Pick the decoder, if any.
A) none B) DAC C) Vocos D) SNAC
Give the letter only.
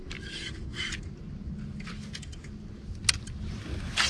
A